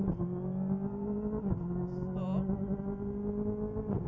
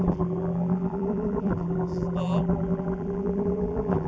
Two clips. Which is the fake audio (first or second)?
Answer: second